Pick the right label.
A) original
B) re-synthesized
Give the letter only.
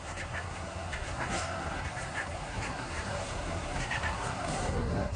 B